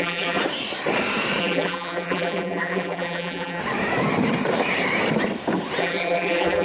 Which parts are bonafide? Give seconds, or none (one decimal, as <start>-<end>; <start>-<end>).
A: 0.4-1.4; 3.6-5.8